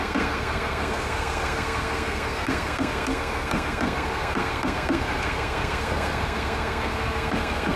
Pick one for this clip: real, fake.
fake